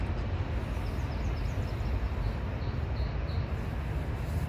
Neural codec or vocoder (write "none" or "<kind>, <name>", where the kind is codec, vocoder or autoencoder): none